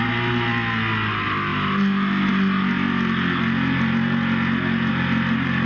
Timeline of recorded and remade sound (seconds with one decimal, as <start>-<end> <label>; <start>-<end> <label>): 0.0-5.7 recorded